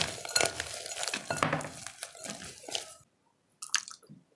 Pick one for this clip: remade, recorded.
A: recorded